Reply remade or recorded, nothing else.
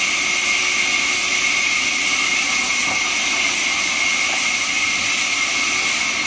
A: recorded